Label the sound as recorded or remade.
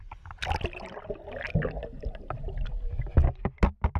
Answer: recorded